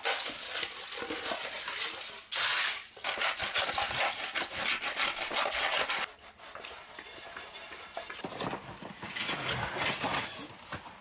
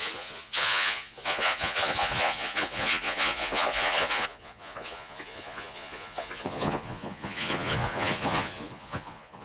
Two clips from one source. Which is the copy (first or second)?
second